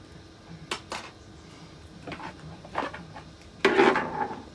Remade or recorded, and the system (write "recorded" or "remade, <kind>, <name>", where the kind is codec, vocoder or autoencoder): recorded